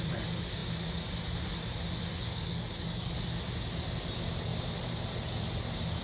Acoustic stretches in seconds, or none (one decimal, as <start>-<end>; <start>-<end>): 0.0-2.3; 3.1-6.0